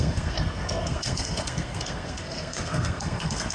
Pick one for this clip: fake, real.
fake